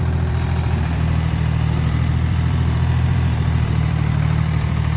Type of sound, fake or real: fake